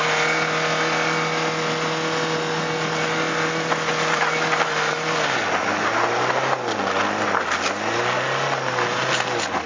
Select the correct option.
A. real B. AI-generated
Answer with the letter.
A